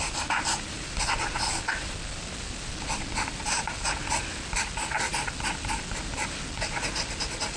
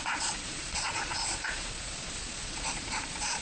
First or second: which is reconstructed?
second